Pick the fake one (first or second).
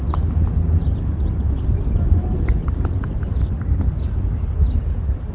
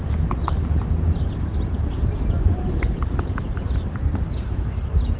second